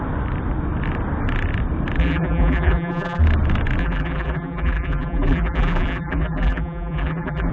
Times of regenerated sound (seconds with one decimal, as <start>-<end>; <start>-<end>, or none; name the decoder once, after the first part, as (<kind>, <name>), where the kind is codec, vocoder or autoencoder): 2.0-3.2 (vocoder, BigVGAN v2); 3.8-7.5